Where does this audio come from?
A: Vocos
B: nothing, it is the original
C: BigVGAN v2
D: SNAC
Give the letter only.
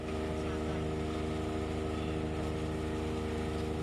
B